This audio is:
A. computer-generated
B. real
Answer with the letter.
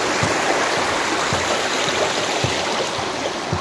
B